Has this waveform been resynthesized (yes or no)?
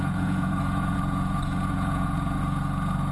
yes